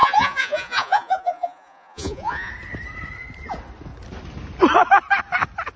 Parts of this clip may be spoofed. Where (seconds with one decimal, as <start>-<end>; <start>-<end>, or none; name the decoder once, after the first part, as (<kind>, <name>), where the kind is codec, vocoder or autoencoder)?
0.0-2.5 (vocoder, Vocos)